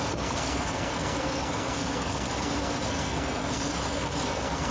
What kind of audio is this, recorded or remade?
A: remade